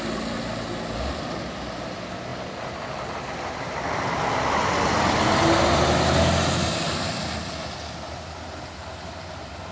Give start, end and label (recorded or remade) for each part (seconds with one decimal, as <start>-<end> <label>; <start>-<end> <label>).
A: 0.0-9.7 recorded